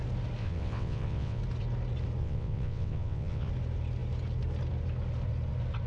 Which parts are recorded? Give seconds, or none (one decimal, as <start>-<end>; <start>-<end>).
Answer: 0.0-0.4; 1.4-2.2; 3.5-5.9